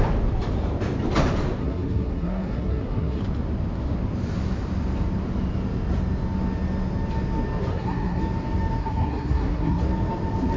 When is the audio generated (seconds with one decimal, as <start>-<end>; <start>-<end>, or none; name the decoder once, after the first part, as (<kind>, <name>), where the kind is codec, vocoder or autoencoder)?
1.6-3.2 (codec, SNAC); 7.7-8.2; 8.8-9.8